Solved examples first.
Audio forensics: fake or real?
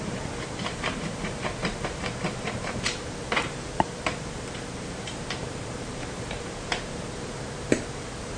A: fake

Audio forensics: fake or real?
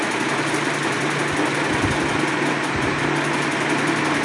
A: real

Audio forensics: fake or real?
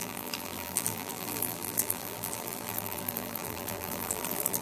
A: fake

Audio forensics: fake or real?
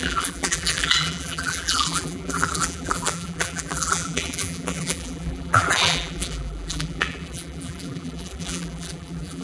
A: fake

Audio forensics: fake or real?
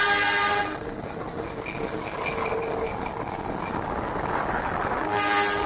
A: real